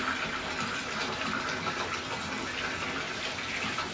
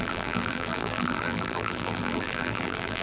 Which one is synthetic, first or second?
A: second